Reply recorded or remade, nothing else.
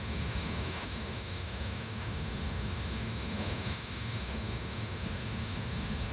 remade